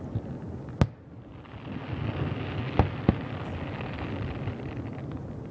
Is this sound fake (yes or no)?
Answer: no